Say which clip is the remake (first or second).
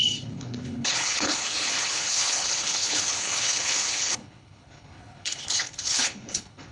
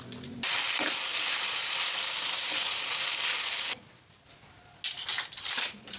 first